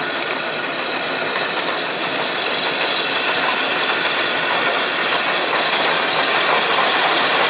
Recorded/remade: recorded